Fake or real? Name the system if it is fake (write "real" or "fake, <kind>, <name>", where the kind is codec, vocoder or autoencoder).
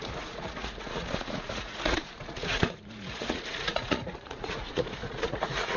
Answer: fake, vocoder, Vocos